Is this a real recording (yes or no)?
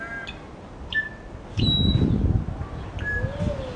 yes